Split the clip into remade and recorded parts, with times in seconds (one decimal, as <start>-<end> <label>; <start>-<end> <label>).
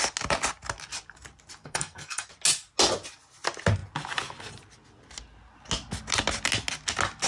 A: 0.0-1.6 recorded; 1.6-2.3 remade; 2.3-7.3 recorded